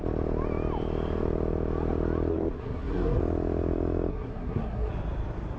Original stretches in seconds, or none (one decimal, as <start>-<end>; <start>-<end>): 0.0-2.3; 3.2-4.1; 4.9-5.6